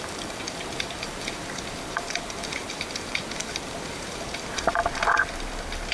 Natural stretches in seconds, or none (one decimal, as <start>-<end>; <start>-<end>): 4.8-5.9